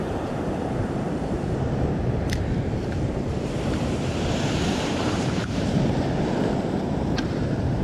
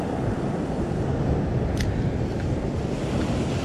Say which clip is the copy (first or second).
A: first